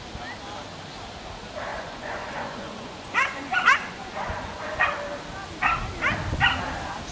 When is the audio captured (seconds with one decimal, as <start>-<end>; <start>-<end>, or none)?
0.0-1.7; 4.8-7.1